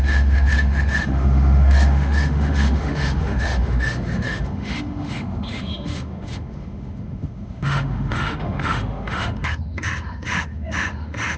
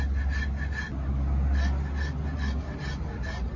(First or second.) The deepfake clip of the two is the first